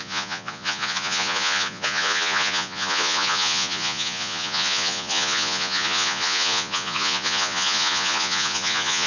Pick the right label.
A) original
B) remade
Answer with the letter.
B